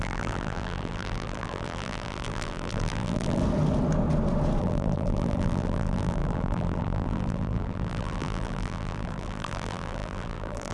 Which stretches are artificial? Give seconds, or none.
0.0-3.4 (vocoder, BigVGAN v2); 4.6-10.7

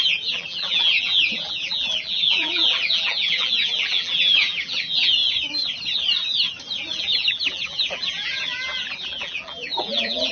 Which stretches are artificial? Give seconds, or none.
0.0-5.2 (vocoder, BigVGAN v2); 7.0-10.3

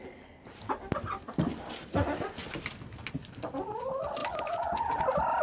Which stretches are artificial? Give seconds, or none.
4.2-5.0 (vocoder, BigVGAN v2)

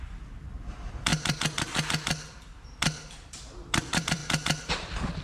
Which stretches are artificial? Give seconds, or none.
0.0-4.2 (vocoder, BigVGAN v2); 4.7-5.2

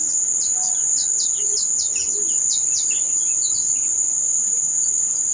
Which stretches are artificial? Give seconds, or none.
1.9-5.3 (vocoder, BigVGAN v2)

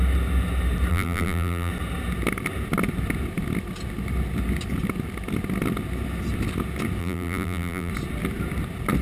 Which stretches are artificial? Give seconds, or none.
0.9-1.7 (vocoder, BigVGAN v2); 7.0-7.9

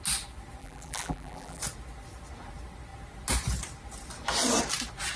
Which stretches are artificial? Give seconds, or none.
0.6-1.6 (vocoder, BigVGAN v2)